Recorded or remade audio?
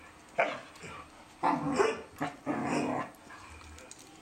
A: recorded